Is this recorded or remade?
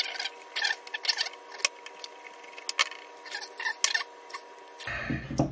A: recorded